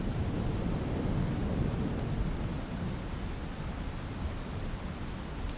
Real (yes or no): yes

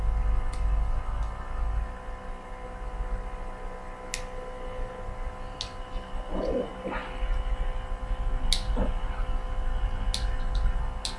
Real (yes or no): yes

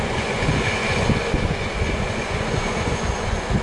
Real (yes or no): no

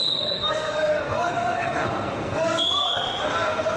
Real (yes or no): no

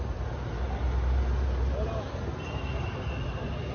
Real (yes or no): yes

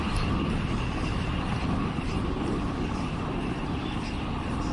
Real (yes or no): no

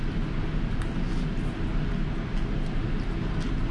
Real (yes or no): yes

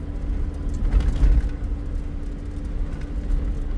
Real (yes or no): yes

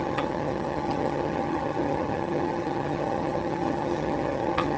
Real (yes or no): no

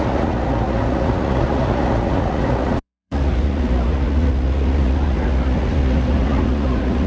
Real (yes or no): no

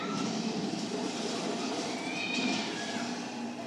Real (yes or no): no